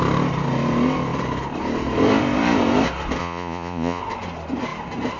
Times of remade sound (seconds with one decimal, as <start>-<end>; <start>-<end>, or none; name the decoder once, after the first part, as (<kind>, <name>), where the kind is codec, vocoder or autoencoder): 3.2-4.0 (vocoder, Vocos)

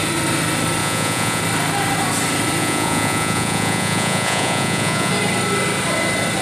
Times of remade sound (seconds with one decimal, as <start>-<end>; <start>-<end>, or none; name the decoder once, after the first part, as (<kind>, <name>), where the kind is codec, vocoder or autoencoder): 0.8-1.4 (vocoder, Vocos); 2.6-5.1

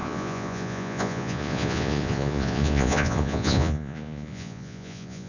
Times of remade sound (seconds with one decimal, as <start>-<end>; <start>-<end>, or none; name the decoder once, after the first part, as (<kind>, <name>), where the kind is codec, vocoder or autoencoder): 0.0-5.3 (vocoder, Vocos)

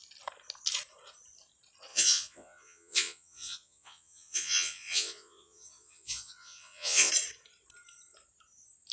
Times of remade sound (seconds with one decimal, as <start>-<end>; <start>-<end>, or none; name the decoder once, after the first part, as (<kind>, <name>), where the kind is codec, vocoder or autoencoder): 1.9-7.1 (vocoder, Vocos)